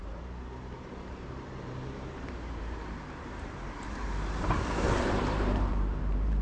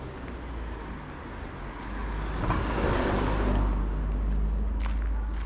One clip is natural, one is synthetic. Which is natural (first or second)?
second